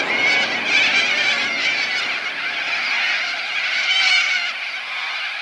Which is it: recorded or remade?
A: recorded